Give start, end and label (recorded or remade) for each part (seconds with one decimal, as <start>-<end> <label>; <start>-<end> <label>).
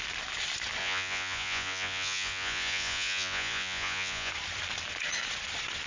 0.0-0.8 recorded; 0.8-4.3 remade; 4.3-5.9 recorded